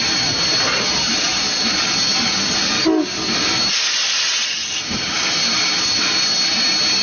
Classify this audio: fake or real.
real